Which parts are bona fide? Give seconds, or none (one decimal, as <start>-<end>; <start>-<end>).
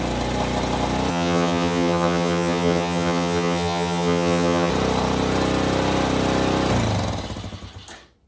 0.0-1.1; 4.7-8.3